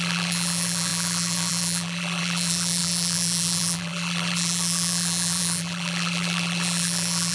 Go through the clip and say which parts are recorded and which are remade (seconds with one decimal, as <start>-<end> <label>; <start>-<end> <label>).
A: 0.0-7.3 remade